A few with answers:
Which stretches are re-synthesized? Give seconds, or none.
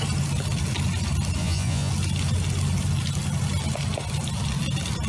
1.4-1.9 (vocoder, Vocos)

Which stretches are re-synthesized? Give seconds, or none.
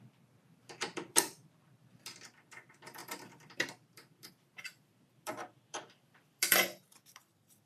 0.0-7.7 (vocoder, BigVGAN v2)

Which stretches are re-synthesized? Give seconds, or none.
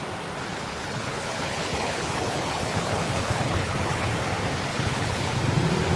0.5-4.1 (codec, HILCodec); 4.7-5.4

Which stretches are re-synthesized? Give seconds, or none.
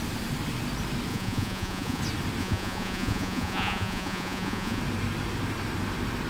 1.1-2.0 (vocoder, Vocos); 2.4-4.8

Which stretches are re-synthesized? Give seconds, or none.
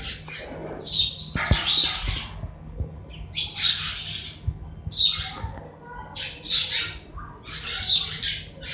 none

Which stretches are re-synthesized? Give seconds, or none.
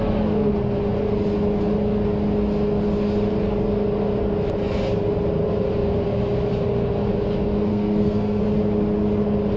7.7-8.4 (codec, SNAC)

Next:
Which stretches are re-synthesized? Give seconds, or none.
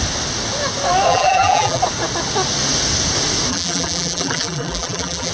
1.1-1.8 (vocoder, BigVGAN v2); 3.5-5.3